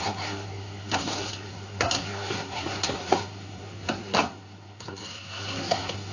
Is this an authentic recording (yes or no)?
no